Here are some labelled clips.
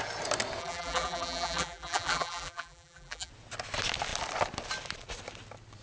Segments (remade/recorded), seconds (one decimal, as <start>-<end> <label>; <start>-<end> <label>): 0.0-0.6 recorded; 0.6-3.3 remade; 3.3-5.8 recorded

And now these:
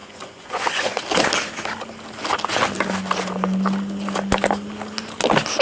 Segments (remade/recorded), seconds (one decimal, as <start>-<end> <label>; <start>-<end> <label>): 0.0-1.0 remade; 1.0-5.6 recorded

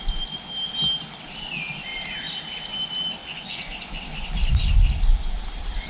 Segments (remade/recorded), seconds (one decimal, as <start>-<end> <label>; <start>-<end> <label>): 0.0-3.2 recorded; 3.2-4.0 remade; 4.0-5.9 recorded

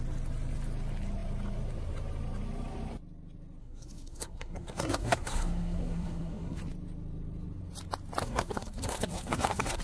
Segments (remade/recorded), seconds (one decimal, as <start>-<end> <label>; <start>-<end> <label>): 0.0-3.6 recorded; 3.6-6.6 remade; 6.6-8.2 recorded; 8.2-9.8 remade

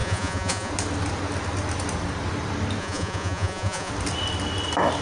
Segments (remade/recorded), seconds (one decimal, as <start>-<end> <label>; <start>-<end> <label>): 0.0-0.7 remade; 0.7-2.8 recorded; 2.8-3.9 remade; 3.9-5.0 recorded

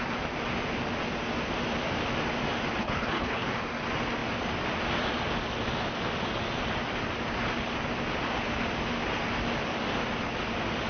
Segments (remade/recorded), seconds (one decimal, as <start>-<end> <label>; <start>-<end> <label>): 0.0-2.8 recorded; 2.8-3.5 remade; 3.5-10.9 recorded

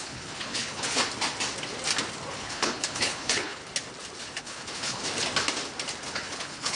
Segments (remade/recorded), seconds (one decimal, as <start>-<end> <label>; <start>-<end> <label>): 0.0-1.0 remade; 1.0-2.3 recorded; 2.3-3.6 remade; 3.6-4.4 recorded; 4.4-5.0 remade; 5.0-6.1 recorded; 6.1-6.8 remade

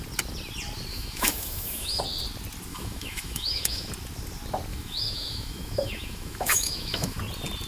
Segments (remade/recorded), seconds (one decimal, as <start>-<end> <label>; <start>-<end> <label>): 0.0-0.9 recorded; 0.9-2.0 remade; 2.0-2.7 recorded; 2.7-3.9 remade; 3.9-4.7 recorded; 4.7-7.2 remade; 7.2-7.7 recorded